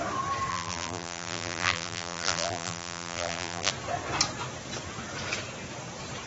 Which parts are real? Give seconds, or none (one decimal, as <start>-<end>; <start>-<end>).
0.0-0.5; 3.7-6.3